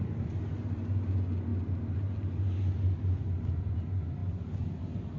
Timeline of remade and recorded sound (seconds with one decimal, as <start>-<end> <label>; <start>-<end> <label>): 0.0-5.2 recorded